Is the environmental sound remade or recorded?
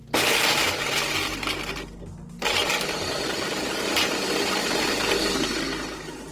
recorded